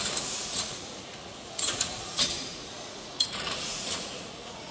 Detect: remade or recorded remade